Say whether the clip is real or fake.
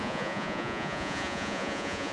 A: fake